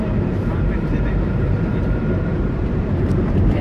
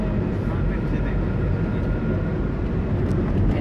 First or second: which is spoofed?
first